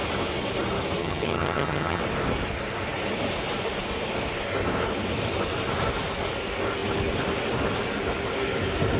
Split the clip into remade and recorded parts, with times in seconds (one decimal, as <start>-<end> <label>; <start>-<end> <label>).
0.0-1.0 recorded; 1.0-2.0 remade; 2.0-9.0 recorded